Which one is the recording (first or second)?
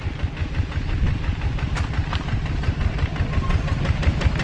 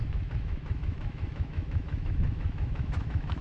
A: first